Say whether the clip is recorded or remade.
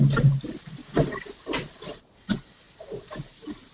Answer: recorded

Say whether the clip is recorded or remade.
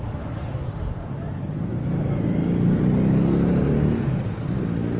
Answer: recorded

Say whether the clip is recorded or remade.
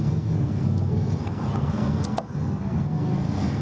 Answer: remade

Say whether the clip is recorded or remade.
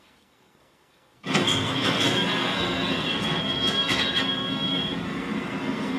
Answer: remade